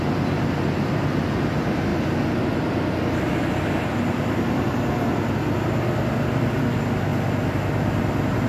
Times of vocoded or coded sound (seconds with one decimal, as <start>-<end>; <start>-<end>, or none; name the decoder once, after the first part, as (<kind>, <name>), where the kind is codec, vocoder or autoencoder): none